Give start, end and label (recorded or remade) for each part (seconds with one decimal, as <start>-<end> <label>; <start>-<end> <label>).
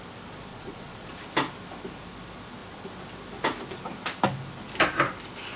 0.0-0.5 recorded; 0.5-1.2 remade; 1.2-5.6 recorded